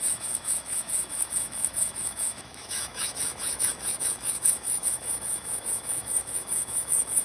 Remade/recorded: remade